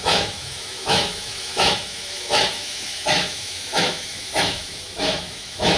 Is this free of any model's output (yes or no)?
no